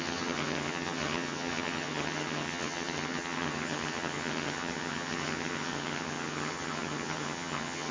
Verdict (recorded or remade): remade